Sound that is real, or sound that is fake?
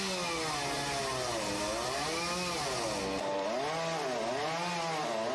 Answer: real